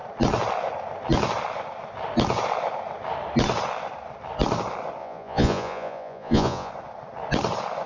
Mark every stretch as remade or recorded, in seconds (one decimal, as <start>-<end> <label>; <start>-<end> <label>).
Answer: 0.0-5.0 recorded; 5.0-6.7 remade; 6.7-7.9 recorded